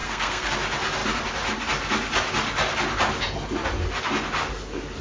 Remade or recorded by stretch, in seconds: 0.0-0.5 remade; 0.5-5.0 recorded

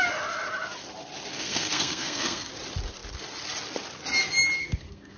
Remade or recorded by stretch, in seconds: 0.0-1.3 recorded; 1.3-2.5 remade; 2.5-4.6 recorded; 4.6-5.2 remade

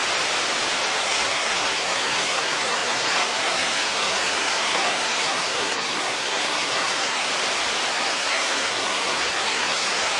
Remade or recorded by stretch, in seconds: 0.0-1.0 recorded; 1.0-7.3 remade; 7.3-7.9 recorded; 7.9-10.2 remade

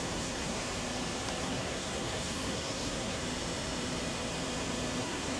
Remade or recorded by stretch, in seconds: 0.0-0.6 remade; 0.6-1.4 recorded; 1.4-3.2 remade; 3.2-5.0 recorded; 5.0-5.4 remade